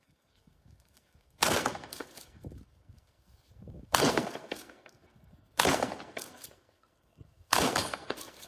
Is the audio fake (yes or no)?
yes